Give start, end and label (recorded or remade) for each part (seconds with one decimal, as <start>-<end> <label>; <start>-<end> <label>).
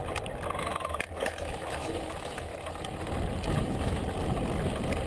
0.0-0.6 recorded; 0.6-2.5 remade; 2.5-3.6 recorded; 3.6-4.0 remade; 4.0-5.1 recorded